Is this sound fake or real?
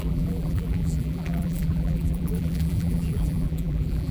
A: fake